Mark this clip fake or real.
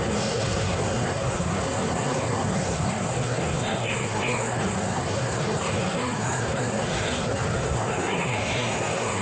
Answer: fake